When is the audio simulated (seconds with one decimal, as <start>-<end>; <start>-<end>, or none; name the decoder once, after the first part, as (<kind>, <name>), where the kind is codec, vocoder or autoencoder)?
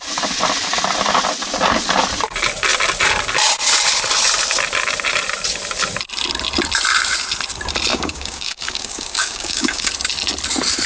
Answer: 7.9-9.9 (codec, DAC)